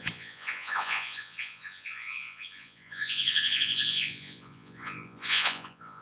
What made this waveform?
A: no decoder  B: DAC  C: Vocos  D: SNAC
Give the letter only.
C